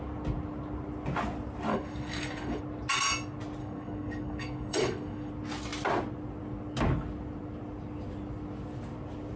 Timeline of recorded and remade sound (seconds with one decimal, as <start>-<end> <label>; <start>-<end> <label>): 0.0-1.7 recorded; 1.7-2.6 remade; 2.6-3.6 recorded; 3.6-5.3 remade; 5.3-9.4 recorded